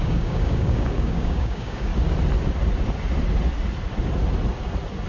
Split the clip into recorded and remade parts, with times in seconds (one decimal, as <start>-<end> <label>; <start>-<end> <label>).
0.0-1.9 remade; 1.9-5.1 recorded